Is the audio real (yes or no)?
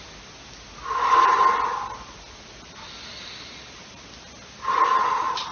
yes